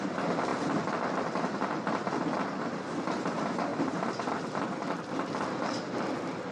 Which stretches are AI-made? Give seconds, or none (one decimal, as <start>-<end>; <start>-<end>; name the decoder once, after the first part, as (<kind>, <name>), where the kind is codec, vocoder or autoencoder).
0.0-0.5 (vocoder, BigVGAN v2); 1.4-2.2; 3.1-6.5